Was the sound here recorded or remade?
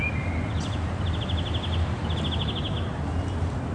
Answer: recorded